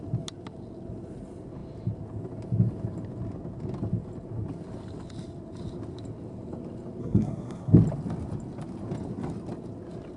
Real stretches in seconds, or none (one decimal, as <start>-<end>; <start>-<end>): 0.0-7.0; 7.7-10.2